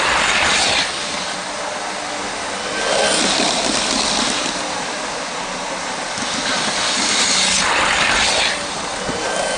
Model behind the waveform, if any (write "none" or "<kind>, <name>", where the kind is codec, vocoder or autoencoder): none